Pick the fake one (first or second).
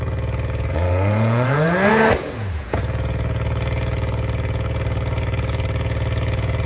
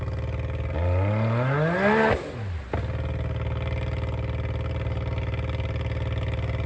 first